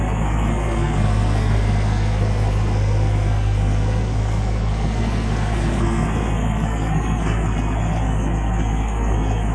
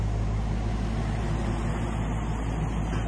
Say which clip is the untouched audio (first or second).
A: second